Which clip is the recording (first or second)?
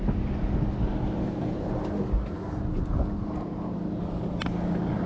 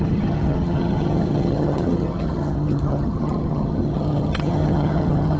first